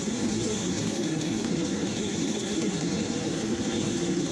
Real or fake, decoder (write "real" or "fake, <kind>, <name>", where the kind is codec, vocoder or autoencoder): fake, codec, SNAC